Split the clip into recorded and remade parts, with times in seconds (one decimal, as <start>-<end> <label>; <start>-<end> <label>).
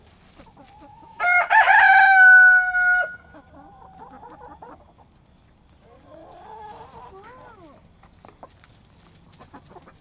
0.0-1.0 recorded; 1.0-3.4 remade; 3.4-10.0 recorded